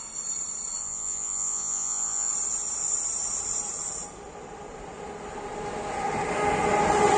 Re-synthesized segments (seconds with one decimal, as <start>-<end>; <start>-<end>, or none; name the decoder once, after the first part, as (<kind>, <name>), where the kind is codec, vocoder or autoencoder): 0.8-2.3 (vocoder, Vocos)